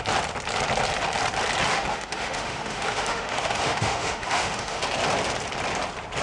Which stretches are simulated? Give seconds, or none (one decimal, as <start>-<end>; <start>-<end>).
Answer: 1.7-4.8